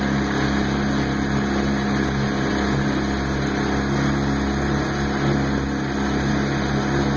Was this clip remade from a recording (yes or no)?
no